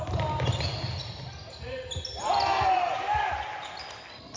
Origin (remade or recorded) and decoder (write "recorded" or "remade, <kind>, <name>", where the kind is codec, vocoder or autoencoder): recorded